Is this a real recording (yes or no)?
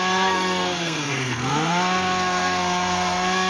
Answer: no